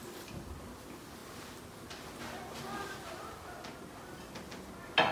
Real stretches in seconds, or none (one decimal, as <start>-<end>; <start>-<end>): 0.0-5.1